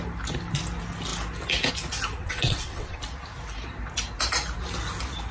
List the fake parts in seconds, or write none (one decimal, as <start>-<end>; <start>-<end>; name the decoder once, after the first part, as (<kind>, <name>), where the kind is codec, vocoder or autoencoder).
2.2-3.0 (vocoder, WaveNeXt)